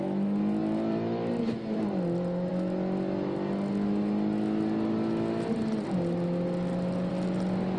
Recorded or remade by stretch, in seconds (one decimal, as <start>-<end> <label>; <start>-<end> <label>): 0.0-0.6 recorded; 0.6-1.3 remade; 1.3-7.8 recorded